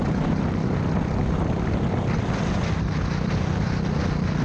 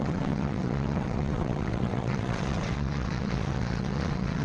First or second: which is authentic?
first